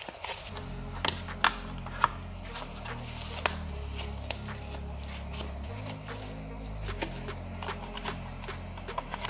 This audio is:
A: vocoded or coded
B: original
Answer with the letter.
B